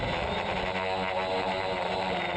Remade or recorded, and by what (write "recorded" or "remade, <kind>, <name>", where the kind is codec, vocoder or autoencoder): recorded